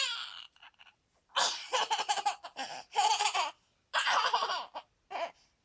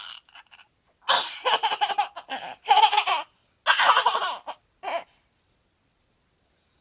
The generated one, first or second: first